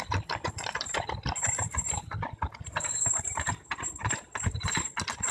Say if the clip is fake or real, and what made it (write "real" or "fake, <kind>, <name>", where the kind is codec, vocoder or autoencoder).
real